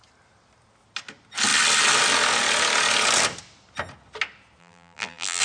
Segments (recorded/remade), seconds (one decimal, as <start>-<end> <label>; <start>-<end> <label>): 0.0-4.6 recorded; 4.6-5.4 remade